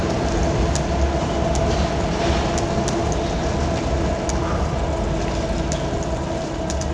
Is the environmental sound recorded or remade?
recorded